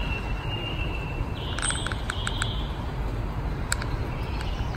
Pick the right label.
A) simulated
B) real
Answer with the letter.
B